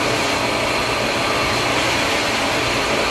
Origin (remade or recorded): recorded